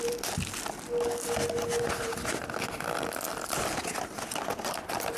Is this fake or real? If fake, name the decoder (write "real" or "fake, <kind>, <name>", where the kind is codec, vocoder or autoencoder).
real